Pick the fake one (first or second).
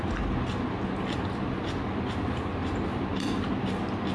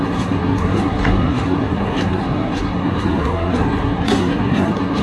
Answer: second